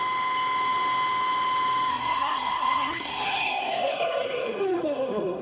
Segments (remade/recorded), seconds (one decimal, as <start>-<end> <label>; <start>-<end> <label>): 0.0-1.9 recorded; 1.9-5.4 remade